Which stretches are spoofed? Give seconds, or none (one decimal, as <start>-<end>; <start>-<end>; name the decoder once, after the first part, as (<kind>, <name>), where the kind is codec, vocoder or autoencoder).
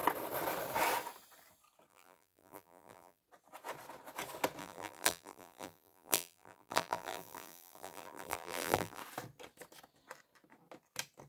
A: 1.9-3.2 (vocoder, BigVGAN v2); 4.6-9.0